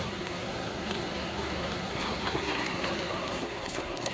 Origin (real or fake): fake